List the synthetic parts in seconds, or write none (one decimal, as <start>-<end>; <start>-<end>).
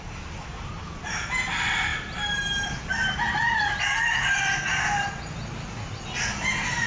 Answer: none